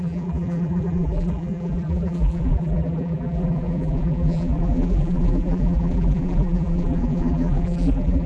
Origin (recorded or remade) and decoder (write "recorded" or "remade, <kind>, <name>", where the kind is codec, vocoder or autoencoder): remade, vocoder, BigVGAN v2